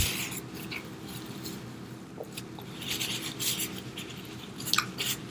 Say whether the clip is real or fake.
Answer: real